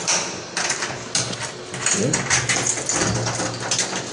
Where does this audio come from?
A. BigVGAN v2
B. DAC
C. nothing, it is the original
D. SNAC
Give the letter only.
C